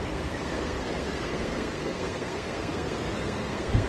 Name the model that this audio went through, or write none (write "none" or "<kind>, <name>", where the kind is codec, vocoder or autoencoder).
codec, SNAC